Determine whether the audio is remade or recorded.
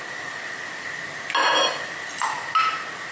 recorded